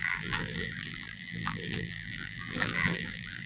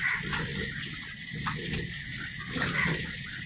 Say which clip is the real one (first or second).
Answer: second